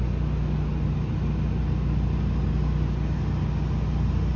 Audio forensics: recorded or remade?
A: recorded